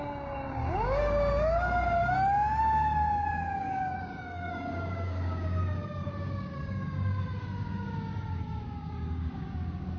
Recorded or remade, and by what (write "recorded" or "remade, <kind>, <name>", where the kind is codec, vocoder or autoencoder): remade, codec, DAC